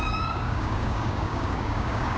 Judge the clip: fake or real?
fake